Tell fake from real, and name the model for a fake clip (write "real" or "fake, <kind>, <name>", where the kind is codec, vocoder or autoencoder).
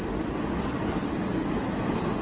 real